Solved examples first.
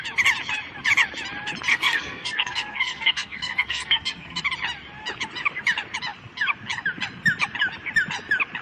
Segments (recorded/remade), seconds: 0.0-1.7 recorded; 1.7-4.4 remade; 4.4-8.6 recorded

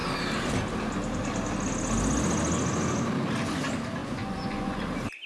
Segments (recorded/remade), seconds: 0.0-4.0 recorded; 4.0-4.8 remade; 4.8-5.3 recorded

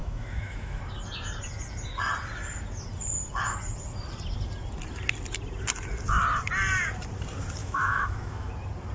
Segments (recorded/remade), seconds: 0.0-0.8 remade; 0.8-7.6 recorded; 7.6-8.5 remade; 8.5-8.9 recorded